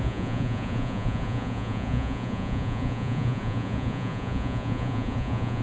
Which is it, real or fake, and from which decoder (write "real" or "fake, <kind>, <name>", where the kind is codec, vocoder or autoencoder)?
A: fake, vocoder, Vocos